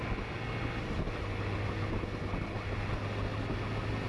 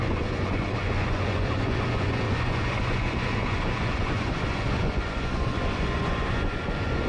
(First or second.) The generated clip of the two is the second